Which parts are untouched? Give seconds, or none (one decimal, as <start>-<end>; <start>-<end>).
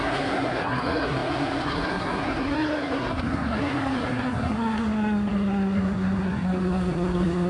none